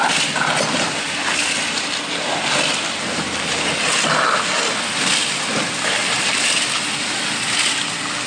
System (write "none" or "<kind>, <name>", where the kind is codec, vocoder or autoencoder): none